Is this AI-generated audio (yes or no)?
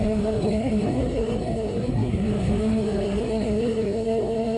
yes